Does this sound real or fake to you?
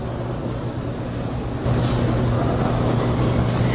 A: real